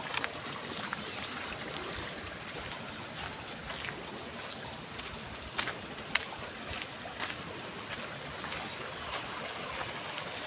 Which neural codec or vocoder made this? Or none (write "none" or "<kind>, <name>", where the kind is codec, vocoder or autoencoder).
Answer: none